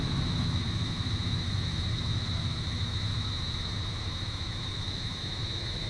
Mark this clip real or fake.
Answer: fake